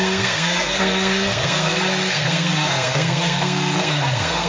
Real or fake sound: fake